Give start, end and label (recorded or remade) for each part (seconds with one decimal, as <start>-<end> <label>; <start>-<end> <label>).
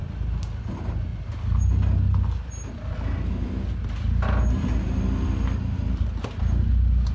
0.0-7.1 recorded